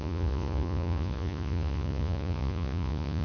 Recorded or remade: remade